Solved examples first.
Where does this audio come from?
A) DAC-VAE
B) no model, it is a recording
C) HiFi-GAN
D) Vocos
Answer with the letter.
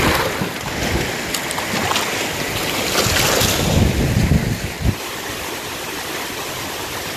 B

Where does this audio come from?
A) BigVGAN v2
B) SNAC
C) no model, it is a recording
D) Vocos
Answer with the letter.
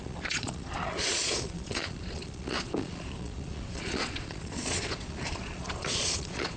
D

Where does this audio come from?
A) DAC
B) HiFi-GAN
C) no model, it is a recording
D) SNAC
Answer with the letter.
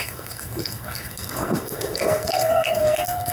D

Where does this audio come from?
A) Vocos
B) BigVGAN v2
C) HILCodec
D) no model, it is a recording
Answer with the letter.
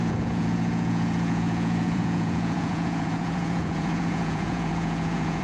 A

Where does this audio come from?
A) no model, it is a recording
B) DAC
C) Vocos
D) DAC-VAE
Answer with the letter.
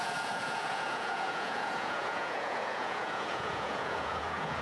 C